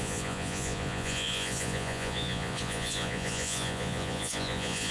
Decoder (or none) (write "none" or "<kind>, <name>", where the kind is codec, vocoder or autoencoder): vocoder, Vocos